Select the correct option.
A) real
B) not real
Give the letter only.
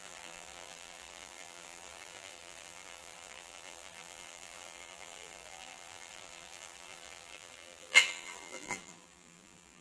B